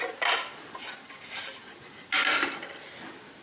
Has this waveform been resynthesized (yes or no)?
no